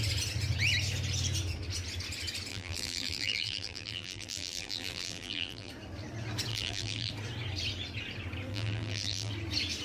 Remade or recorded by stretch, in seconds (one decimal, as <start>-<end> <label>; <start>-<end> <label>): 0.0-2.5 recorded; 2.5-5.7 remade; 5.7-6.5 recorded; 6.5-7.1 remade; 7.1-8.5 recorded; 8.5-9.3 remade; 9.3-9.8 recorded